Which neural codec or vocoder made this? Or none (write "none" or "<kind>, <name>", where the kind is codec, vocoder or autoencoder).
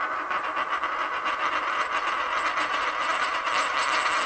none